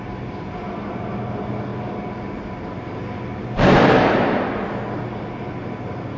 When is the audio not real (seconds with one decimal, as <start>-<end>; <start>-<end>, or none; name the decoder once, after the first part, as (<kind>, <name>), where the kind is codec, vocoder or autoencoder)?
none